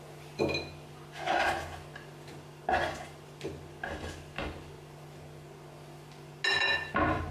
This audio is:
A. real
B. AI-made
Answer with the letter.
A